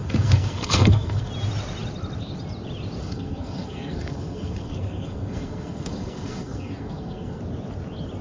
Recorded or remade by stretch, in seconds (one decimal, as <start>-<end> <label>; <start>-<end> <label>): 0.0-1.3 remade; 1.3-3.0 recorded; 3.0-7.4 remade; 7.4-8.2 recorded